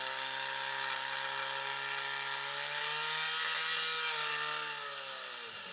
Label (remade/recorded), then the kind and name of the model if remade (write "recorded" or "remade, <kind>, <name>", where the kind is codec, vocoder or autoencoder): recorded